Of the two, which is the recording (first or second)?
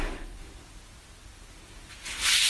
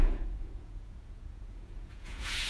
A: first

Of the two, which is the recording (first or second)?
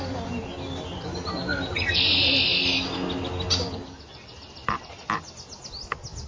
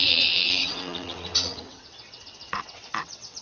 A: first